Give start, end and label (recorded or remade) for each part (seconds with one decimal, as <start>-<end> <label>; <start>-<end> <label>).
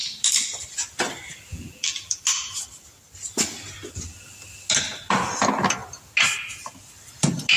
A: 0.0-1.5 recorded; 1.5-2.2 remade; 2.2-7.6 recorded